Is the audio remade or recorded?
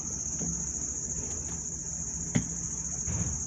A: recorded